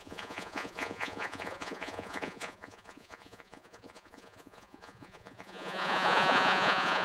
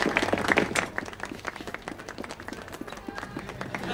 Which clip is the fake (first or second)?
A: first